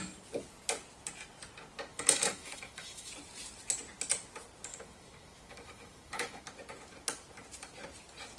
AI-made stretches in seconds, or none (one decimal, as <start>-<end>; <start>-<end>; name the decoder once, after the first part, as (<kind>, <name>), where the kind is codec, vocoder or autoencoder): 1.9-3.1 (autoencoder, DAC-VAE); 4.7-6.4